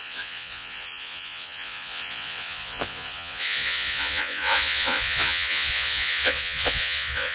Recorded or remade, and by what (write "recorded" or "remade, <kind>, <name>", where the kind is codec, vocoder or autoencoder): remade, vocoder, Vocos